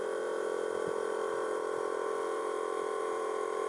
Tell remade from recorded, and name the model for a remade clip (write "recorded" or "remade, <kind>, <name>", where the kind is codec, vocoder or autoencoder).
remade, vocoder, BigVGAN v2